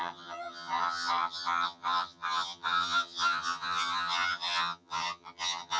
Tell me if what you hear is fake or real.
fake